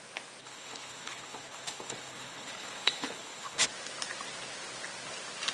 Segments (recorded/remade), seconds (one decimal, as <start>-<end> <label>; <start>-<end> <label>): 0.0-0.4 recorded; 0.4-3.7 remade; 3.7-5.5 recorded